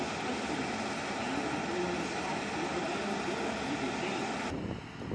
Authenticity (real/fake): real